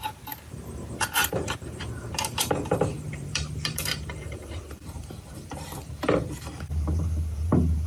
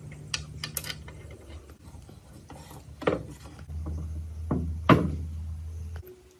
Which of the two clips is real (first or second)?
second